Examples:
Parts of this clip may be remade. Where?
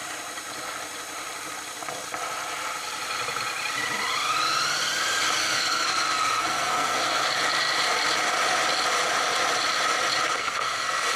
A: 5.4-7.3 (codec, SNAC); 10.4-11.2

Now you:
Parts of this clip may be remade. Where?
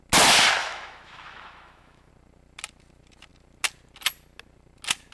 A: 0.6-2.1 (autoencoder, DAC-VAE)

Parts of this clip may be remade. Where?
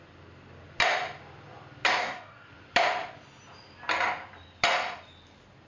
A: 2.0-2.5 (codec, DAC)